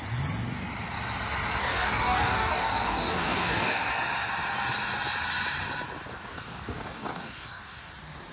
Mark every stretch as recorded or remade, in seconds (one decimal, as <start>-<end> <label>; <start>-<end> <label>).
0.0-1.6 recorded; 1.6-3.9 remade; 3.9-6.1 recorded; 6.1-7.9 remade; 7.9-8.3 recorded